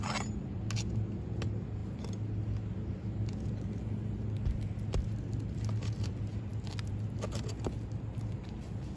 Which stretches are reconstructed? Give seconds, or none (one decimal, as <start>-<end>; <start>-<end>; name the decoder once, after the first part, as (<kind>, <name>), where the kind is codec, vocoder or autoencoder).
none